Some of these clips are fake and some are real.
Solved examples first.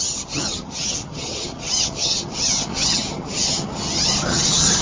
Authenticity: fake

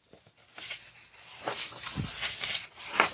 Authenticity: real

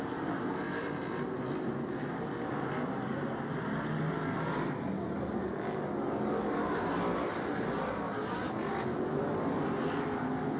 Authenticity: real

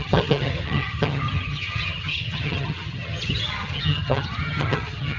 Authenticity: fake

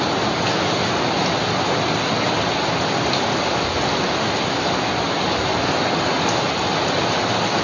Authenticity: real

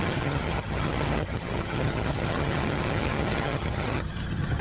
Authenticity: fake